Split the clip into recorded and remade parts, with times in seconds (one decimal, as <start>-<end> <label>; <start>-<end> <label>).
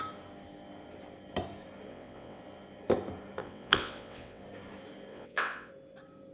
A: 0.0-1.9 recorded; 1.9-2.4 remade; 2.4-3.4 recorded; 3.4-4.4 remade; 4.4-5.1 recorded; 5.1-5.7 remade; 5.7-6.3 recorded